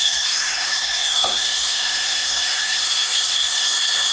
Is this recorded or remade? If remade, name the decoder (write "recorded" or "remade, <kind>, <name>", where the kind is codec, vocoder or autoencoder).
remade, codec, SNAC